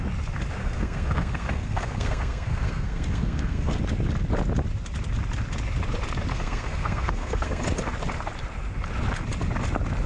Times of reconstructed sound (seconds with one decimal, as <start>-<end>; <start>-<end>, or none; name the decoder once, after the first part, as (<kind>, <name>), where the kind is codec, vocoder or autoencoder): 0.6-3.8 (codec, SNAC); 6.3-7.6